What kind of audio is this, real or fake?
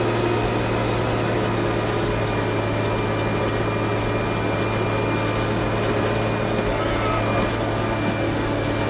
real